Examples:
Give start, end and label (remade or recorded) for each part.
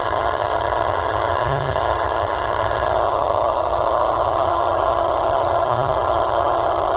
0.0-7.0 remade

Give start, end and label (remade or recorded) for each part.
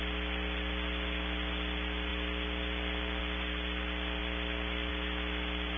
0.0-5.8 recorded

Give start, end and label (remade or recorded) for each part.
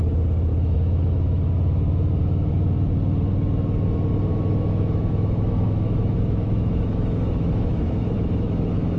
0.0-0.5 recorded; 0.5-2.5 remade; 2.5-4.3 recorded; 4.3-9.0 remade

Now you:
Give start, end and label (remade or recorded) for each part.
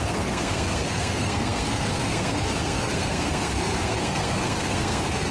0.0-5.3 remade